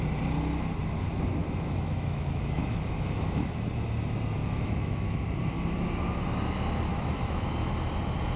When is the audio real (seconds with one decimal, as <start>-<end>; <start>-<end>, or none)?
0.0-1.4; 3.5-4.4; 5.2-6.9; 7.5-8.4